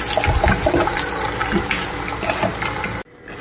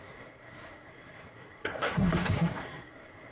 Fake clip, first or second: second